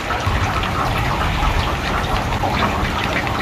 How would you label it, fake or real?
fake